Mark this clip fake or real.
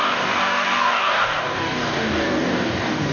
fake